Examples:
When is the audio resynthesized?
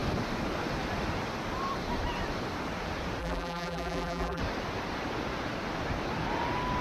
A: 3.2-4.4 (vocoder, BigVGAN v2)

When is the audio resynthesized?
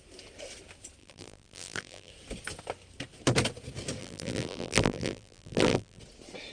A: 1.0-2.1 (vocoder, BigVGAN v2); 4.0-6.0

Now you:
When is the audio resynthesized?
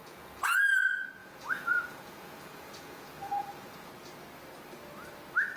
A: 0.0-0.6 (vocoder, Vocos); 1.2-3.9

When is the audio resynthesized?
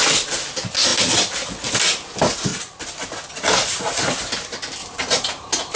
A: 4.8-5.8 (vocoder, BigVGAN v2)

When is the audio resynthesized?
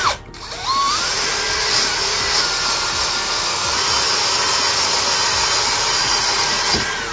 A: 6.0-6.6 (vocoder, Vocos)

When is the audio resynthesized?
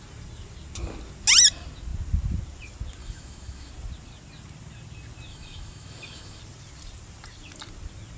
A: 3.0-3.7 (autoencoder, DAC-VAE); 5.3-6.4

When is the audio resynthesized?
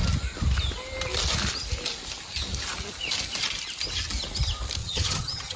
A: 4.8-5.6 (vocoder, HiFi-GAN)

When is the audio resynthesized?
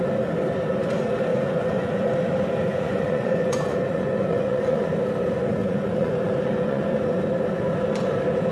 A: 1.3-2.1 (vocoder, Vocos); 2.7-4.9; 5.6-7.0